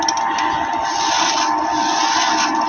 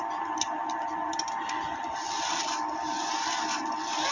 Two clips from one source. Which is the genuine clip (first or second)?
first